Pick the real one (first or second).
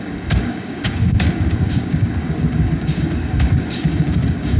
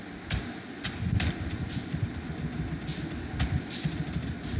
second